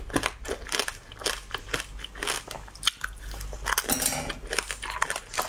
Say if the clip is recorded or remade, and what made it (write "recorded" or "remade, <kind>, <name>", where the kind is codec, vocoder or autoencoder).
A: recorded